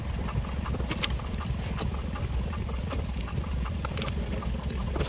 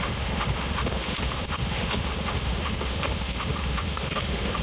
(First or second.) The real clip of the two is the first